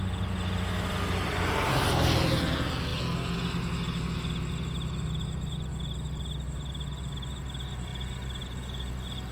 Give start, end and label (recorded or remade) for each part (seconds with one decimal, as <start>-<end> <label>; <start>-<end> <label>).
0.0-9.3 recorded